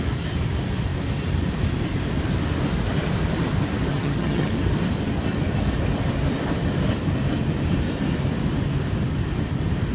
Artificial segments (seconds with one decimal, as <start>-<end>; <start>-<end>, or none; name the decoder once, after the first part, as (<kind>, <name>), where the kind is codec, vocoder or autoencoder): 3.9-4.5 (vocoder, HiFi-GAN)